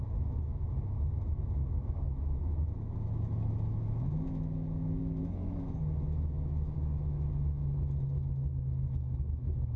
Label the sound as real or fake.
fake